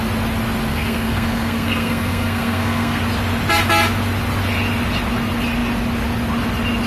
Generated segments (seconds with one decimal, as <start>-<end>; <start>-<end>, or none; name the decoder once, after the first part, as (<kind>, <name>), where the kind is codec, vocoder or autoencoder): 0.7-3.0 (codec, SNAC)